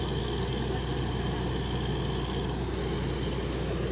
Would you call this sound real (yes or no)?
yes